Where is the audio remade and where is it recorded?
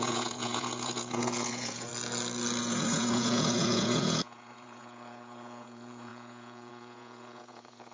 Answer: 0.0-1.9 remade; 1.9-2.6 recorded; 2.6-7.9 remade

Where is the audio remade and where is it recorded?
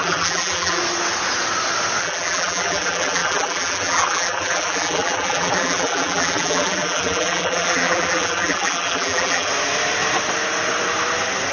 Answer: 0.0-0.8 remade; 0.8-2.0 recorded; 2.0-9.5 remade; 9.5-11.5 recorded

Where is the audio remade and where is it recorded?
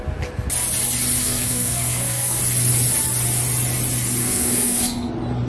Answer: 0.0-1.2 recorded; 1.2-2.4 remade; 2.4-4.2 recorded; 4.2-5.1 remade; 5.1-5.5 recorded